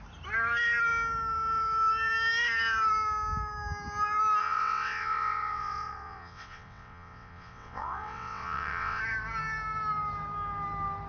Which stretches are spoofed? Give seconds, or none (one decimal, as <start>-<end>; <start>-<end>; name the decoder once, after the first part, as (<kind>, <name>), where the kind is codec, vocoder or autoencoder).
4.4-9.0 (vocoder, WaveNeXt)